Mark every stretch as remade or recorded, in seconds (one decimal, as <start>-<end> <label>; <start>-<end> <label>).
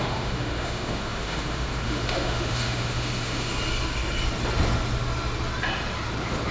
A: 0.0-3.5 remade; 3.5-6.5 recorded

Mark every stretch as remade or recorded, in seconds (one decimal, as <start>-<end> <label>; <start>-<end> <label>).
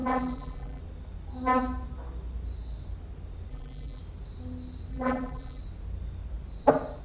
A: 0.0-0.8 remade; 0.8-3.5 recorded; 3.5-4.0 remade; 4.0-4.9 recorded; 4.9-5.6 remade; 5.6-7.0 recorded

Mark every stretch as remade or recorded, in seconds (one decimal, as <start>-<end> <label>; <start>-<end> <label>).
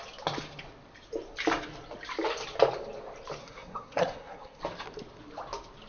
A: 0.0-3.4 recorded; 3.4-4.6 remade; 4.6-5.9 recorded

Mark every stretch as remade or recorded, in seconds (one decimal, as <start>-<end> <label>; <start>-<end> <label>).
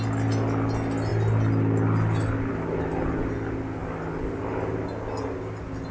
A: 0.0-5.9 recorded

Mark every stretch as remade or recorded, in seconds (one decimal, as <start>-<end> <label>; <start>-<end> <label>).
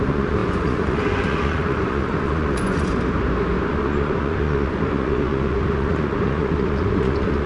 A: 0.0-2.9 remade; 2.9-3.7 recorded; 3.7-7.5 remade